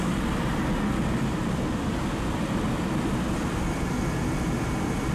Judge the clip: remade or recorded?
recorded